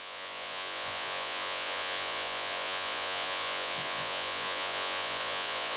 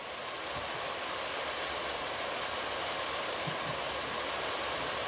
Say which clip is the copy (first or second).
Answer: first